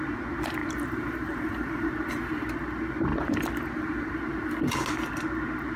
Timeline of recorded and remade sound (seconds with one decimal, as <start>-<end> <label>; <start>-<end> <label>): 0.0-0.6 recorded; 0.6-1.9 remade; 1.9-3.1 recorded; 3.1-4.1 remade; 4.1-5.8 recorded